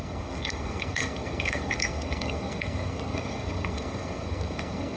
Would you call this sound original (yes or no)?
no